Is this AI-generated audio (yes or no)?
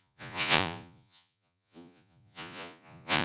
yes